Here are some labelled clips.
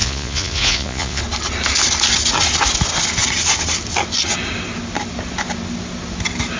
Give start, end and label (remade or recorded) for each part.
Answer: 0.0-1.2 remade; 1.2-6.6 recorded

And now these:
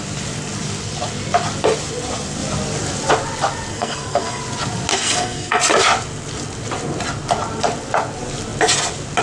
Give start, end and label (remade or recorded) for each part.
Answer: 0.0-3.7 recorded; 3.7-4.4 remade; 4.4-4.9 recorded; 4.9-5.6 remade; 5.6-9.2 recorded

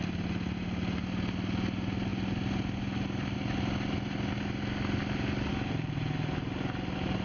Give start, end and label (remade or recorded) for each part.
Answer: 0.0-7.2 recorded

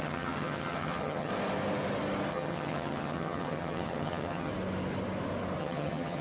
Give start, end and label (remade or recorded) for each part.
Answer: 0.0-1.3 remade; 1.3-2.3 recorded; 2.3-4.5 remade; 4.5-5.6 recorded; 5.6-6.2 remade

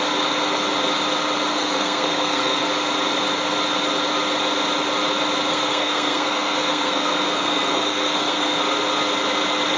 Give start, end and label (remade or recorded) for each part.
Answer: 0.0-1.5 recorded; 1.5-2.7 remade; 2.7-5.5 recorded; 5.5-8.6 remade; 8.6-9.8 recorded